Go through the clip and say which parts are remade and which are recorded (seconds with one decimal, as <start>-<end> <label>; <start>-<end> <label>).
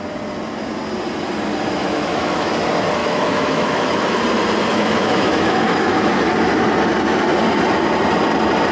0.0-1.8 recorded; 1.8-2.5 remade; 2.5-3.0 recorded; 3.0-4.2 remade; 4.2-4.7 recorded; 4.7-6.2 remade; 6.2-8.7 recorded